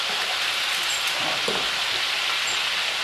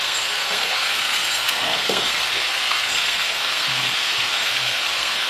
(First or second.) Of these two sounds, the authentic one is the first